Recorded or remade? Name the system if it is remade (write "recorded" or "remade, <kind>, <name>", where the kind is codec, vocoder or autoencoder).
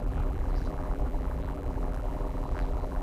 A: remade, vocoder, BigVGAN v2